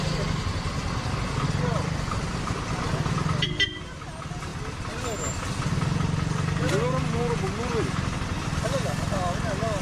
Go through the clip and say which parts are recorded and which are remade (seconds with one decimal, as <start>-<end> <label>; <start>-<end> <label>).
0.0-9.8 recorded